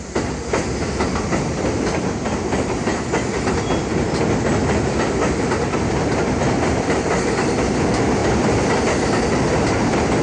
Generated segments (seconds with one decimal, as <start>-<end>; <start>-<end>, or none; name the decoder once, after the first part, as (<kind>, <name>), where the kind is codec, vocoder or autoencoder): none